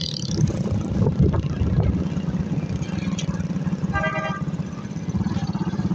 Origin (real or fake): real